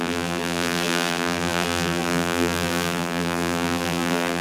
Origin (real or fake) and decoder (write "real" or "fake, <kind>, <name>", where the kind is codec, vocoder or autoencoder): fake, vocoder, BigVGAN v2